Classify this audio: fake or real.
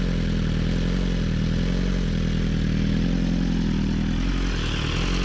real